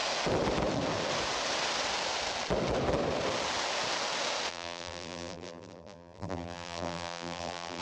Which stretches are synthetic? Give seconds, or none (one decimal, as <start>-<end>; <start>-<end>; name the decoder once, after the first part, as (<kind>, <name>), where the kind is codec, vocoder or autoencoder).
4.5-7.8 (vocoder, BigVGAN v2)